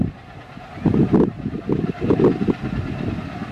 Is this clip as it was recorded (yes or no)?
yes